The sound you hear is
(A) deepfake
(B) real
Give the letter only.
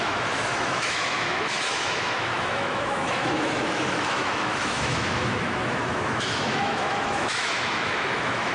A